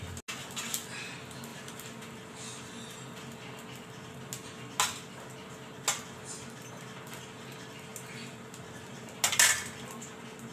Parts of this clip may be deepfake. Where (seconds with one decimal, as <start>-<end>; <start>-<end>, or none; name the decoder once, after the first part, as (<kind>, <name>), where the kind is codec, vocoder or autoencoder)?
none